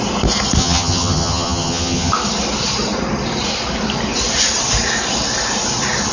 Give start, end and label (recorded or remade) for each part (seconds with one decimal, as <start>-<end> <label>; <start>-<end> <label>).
0.0-0.6 recorded; 0.6-2.1 remade; 2.1-6.1 recorded